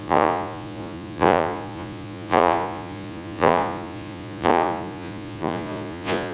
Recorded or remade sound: remade